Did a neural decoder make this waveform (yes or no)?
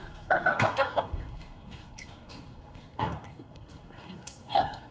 yes